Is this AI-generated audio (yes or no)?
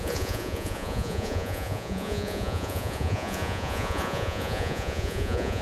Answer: yes